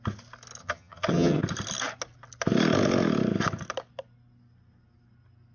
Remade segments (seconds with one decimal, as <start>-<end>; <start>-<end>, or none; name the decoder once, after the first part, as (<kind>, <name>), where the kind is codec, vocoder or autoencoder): 0.6-1.4 (vocoder, HiFi-GAN)